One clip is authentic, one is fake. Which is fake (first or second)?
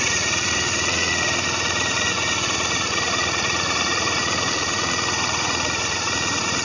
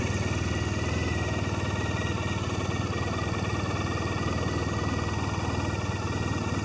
first